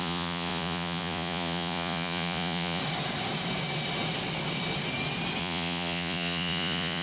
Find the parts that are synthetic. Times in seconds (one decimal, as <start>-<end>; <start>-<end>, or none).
0.0-2.8; 5.4-7.0